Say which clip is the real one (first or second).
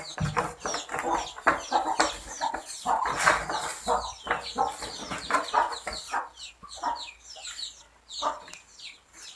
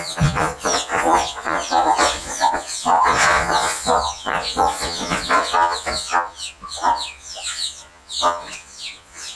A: first